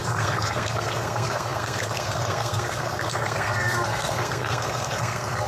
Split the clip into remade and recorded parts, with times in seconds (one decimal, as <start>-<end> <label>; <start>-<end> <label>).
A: 0.0-5.5 remade